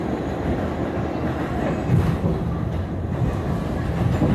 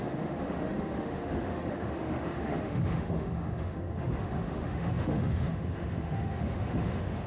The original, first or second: first